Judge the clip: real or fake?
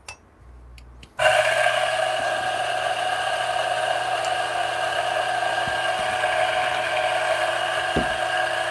real